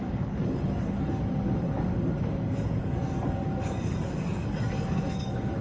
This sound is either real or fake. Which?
fake